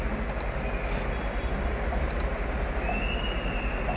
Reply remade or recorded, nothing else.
recorded